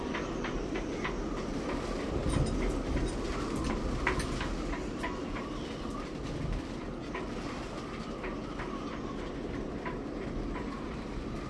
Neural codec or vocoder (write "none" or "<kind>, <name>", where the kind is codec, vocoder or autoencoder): none